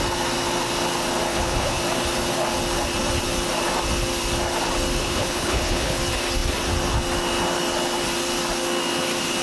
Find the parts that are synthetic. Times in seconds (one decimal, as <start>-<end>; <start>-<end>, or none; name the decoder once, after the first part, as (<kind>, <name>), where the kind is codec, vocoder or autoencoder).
1.3-1.8 (codec, HILCodec); 5.0-6.0

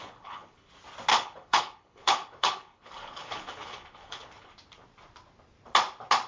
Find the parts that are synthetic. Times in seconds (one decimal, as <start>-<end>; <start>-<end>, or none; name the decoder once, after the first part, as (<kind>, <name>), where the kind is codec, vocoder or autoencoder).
0.0-0.7 (codec, HILCodec); 1.1-4.5

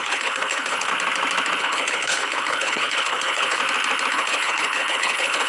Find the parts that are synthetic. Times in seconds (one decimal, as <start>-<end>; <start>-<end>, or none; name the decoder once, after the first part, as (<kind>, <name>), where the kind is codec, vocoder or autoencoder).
0.0-0.9 (codec, HILCodec); 1.6-3.6; 4.1-5.5